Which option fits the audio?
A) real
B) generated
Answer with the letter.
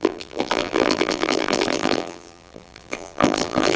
B